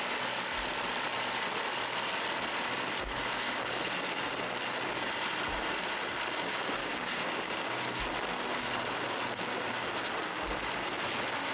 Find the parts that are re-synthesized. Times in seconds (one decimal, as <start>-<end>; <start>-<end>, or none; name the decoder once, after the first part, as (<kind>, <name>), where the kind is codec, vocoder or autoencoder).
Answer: 6.8-8.0 (codec, DAC)